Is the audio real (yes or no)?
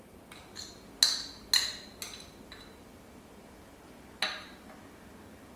yes